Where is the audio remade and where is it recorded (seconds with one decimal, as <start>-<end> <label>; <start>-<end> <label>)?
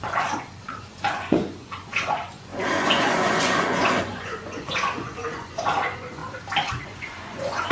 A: 0.0-6.2 remade; 6.2-6.7 recorded; 6.7-7.7 remade